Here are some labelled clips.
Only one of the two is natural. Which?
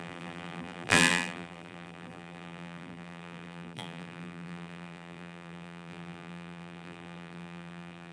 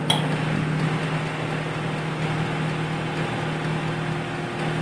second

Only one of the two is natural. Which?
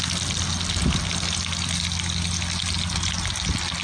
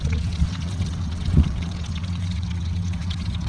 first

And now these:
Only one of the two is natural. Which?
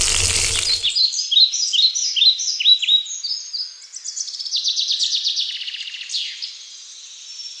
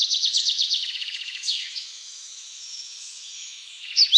first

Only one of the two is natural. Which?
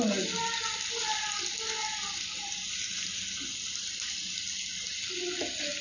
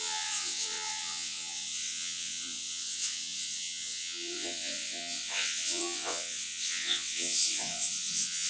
first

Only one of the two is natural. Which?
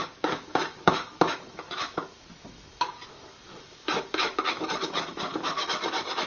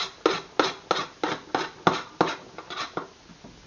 second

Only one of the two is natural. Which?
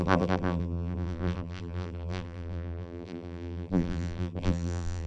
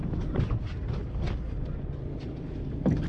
second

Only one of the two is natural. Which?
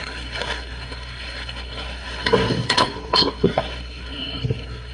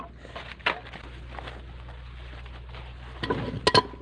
second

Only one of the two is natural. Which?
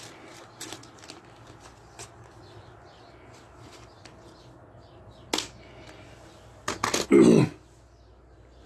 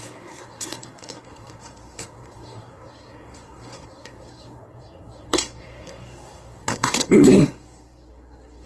first